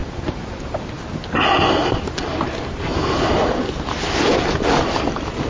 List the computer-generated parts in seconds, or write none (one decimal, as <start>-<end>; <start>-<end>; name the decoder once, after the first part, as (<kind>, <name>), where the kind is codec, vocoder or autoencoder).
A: 0.0-3.3 (vocoder, BigVGAN v2)